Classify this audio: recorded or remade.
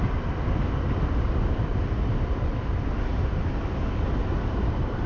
remade